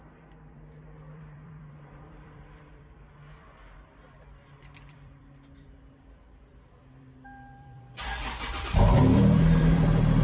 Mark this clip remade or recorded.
remade